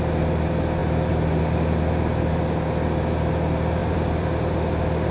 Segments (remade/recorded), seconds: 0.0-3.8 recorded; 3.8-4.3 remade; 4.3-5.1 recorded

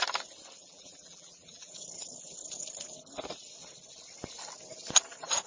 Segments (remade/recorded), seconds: 0.0-0.6 recorded; 0.6-1.7 remade; 1.7-5.5 recorded

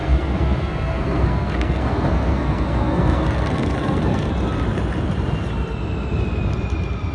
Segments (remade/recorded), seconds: 0.0-4.3 remade; 4.3-7.1 recorded

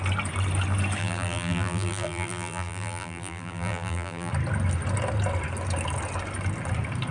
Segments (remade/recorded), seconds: 0.0-1.0 recorded; 1.0-4.3 remade; 4.3-7.1 recorded

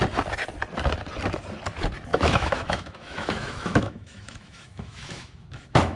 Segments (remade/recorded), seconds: 0.0-2.1 recorded; 2.1-6.0 remade

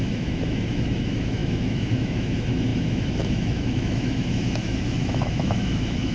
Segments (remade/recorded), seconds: 0.0-6.1 remade

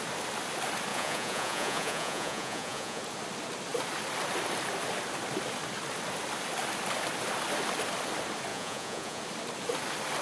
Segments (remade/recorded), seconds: 0.0-0.9 recorded; 0.9-3.0 remade; 3.0-8.5 recorded; 8.5-9.2 remade; 9.2-10.2 recorded